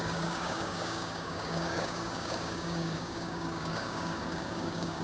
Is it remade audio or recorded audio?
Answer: remade